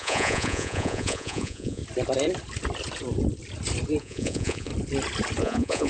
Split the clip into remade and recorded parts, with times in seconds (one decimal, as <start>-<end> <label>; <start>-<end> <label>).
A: 0.0-1.8 remade; 1.8-4.0 recorded; 4.0-4.7 remade; 4.7-5.4 recorded; 5.4-5.9 remade